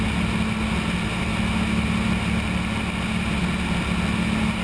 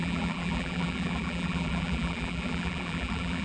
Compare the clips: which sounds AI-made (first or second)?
second